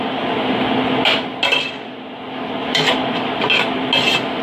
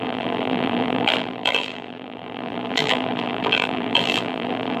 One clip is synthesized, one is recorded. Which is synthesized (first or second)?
second